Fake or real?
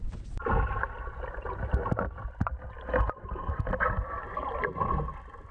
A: real